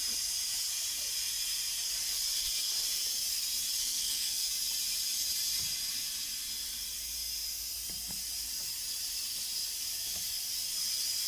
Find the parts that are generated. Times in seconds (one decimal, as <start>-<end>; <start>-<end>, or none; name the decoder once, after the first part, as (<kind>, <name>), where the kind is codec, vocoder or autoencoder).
3.8-4.5 (codec, SNAC)